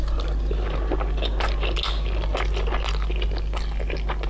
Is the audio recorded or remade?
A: recorded